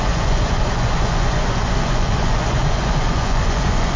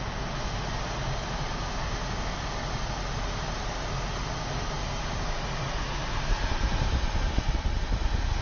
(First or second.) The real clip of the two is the second